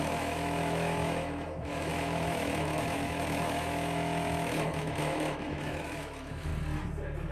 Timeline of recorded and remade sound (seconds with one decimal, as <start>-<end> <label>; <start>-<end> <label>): 0.0-6.5 remade; 6.5-7.3 recorded